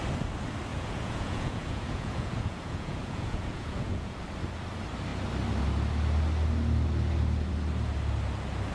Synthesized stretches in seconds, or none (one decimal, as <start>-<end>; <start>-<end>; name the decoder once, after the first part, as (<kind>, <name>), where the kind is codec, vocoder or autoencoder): 0.7-4.2 (vocoder, Vocos)